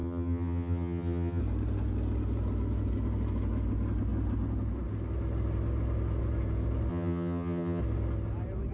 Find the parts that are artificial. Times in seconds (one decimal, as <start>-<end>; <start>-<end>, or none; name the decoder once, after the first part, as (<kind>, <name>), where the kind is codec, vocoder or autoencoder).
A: 0.0-1.4 (vocoder, HiFi-GAN); 6.9-7.8